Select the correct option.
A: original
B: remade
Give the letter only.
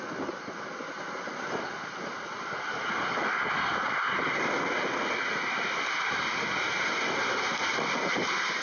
A